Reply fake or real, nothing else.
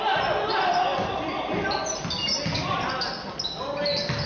real